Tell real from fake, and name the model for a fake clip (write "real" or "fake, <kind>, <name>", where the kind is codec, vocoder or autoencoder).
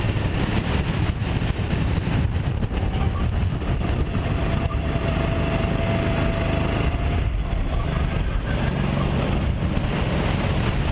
real